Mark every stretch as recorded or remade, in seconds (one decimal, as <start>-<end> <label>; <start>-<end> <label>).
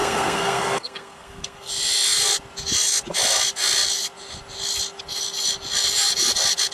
0.0-1.7 remade; 1.7-6.7 recorded